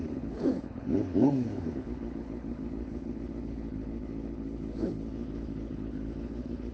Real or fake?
fake